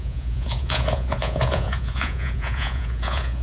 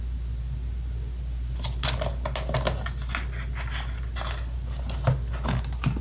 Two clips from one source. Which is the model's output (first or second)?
first